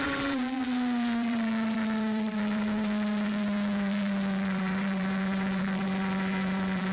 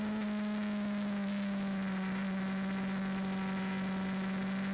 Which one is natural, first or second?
second